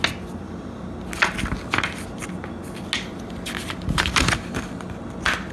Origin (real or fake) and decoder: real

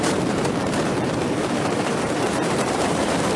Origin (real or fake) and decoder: fake, vocoder, BigVGAN v2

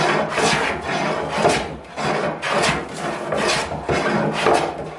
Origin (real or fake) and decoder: real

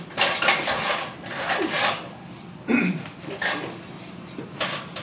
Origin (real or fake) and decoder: real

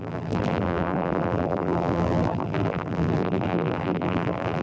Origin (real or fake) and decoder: fake, vocoder, BigVGAN v2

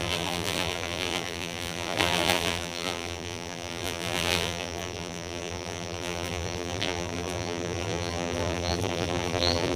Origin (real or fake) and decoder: fake, vocoder, BigVGAN v2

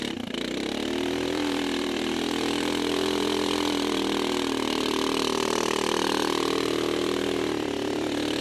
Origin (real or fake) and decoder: fake, vocoder, BigVGAN v2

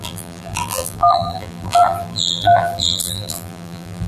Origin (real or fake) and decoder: fake, vocoder, BigVGAN v2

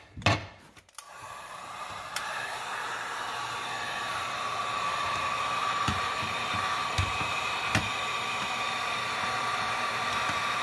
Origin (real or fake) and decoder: fake, vocoder, BigVGAN v2